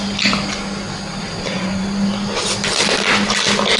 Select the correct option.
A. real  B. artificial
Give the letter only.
A